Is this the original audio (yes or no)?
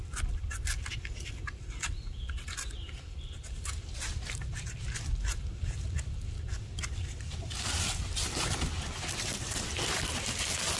yes